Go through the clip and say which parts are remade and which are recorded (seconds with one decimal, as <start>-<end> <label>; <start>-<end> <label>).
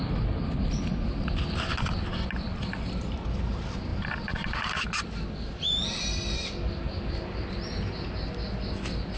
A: 0.0-9.2 recorded